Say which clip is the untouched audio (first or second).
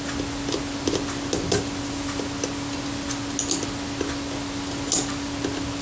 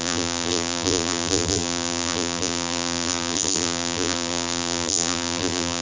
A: first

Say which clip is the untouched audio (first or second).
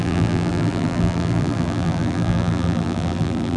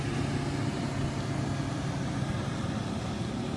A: second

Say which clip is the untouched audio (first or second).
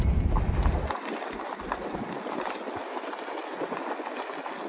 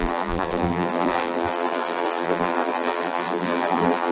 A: first